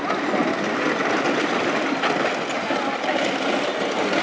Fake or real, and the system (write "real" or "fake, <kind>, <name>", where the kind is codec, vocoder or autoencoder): real